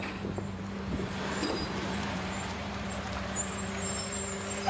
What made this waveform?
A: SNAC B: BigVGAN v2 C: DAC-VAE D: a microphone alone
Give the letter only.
B